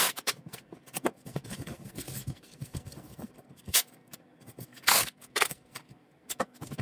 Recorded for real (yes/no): no